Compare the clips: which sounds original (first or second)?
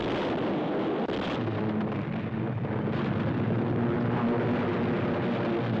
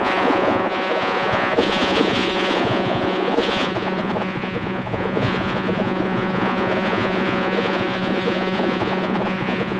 first